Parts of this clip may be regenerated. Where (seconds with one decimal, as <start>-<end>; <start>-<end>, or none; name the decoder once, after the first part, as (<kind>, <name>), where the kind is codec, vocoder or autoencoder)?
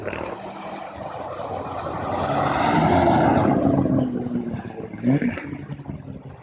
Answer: 0.0-1.2 (vocoder, BigVGAN v2); 1.7-5.5